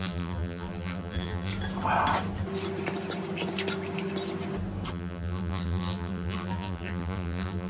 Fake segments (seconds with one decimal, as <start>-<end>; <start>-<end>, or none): 0.0-1.5; 4.9-7.7